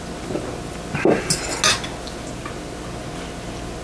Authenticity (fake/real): real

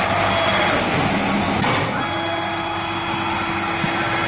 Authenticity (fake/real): real